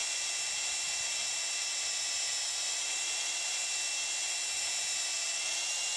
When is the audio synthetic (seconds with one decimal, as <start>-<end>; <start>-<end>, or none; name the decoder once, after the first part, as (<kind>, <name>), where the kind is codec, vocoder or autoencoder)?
none